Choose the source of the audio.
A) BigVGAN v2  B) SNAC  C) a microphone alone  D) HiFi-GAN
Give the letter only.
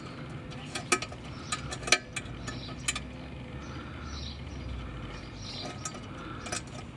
C